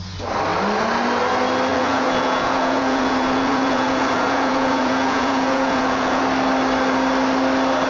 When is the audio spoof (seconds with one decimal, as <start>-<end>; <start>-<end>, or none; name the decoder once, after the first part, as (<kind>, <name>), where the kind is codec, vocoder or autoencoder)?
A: 1.7-6.2 (vocoder, Vocos)